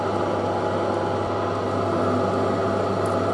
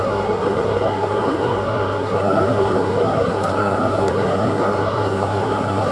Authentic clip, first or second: first